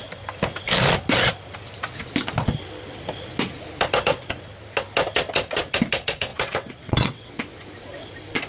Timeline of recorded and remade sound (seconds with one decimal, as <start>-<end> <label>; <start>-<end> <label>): 0.0-6.3 recorded; 6.3-7.4 remade; 7.4-8.5 recorded